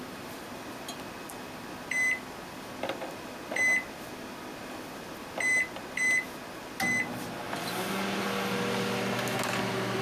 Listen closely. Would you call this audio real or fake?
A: real